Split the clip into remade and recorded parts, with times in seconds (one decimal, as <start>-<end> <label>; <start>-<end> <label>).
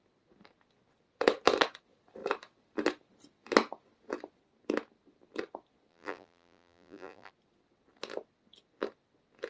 0.0-5.9 recorded; 5.9-7.3 remade; 7.3-9.5 recorded